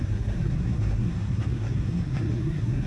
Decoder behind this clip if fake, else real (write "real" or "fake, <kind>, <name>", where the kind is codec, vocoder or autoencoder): fake, codec, SNAC